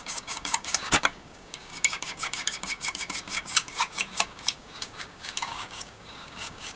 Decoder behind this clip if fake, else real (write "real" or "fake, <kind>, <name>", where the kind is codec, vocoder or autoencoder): fake, codec, DAC